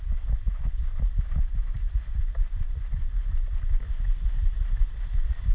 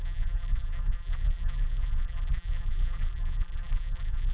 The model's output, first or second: second